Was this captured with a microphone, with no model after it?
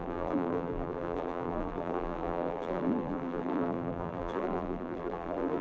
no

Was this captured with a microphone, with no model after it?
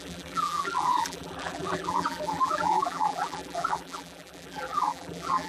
no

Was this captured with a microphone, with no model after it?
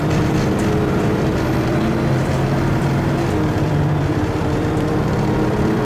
no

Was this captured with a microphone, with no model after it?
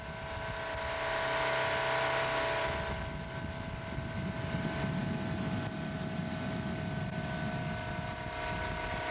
yes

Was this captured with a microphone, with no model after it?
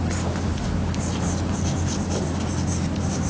yes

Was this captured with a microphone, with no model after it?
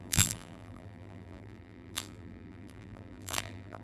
no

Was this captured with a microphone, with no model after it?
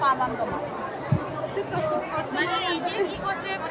yes